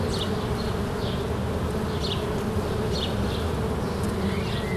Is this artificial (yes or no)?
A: no